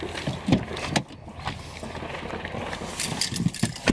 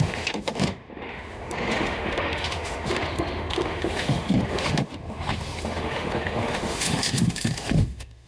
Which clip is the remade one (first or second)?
second